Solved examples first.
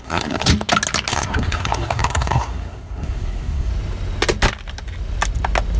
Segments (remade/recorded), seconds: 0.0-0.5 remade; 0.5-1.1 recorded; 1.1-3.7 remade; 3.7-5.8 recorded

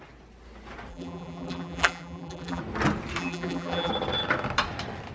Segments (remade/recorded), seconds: 0.0-0.9 recorded; 0.9-2.6 remade; 2.6-3.2 recorded; 3.2-3.9 remade; 3.9-5.1 recorded

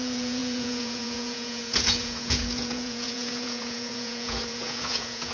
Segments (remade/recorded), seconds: 0.0-5.3 remade

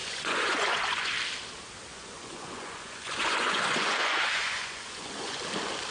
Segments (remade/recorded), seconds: 0.0-1.1 remade; 1.1-1.9 recorded; 1.9-5.4 remade; 5.4-5.9 recorded